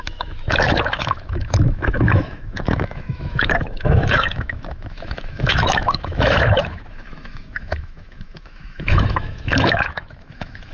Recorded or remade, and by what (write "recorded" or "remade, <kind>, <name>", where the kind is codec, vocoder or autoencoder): remade, autoencoder, DAC-VAE